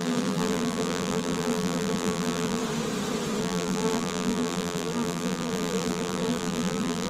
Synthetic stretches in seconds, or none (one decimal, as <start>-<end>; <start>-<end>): 0.0-2.6; 3.4-7.1